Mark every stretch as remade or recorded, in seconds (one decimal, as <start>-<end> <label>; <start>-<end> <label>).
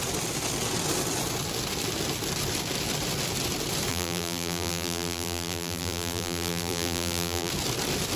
0.0-3.9 recorded; 3.9-7.5 remade; 7.5-8.2 recorded